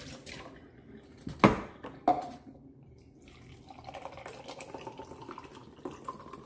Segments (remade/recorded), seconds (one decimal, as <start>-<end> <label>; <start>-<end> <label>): 0.0-6.5 recorded